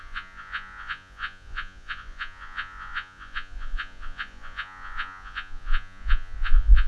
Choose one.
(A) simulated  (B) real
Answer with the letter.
A